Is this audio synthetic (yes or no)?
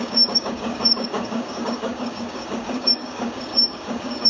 yes